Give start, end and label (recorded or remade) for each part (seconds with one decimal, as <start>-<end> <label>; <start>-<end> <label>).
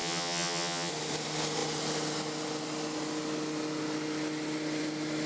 0.0-0.9 remade; 0.9-5.3 recorded